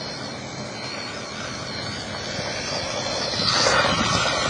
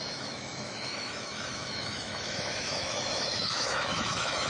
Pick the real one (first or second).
first